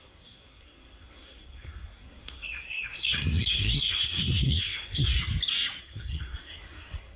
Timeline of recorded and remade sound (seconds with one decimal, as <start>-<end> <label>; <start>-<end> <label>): 0.0-5.3 remade; 5.3-5.8 recorded; 5.8-7.2 remade